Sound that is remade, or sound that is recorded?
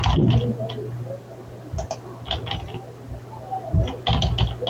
recorded